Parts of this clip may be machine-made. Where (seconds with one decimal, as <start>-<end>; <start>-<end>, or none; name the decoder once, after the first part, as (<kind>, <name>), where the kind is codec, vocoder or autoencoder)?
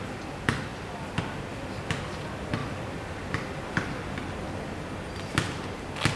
none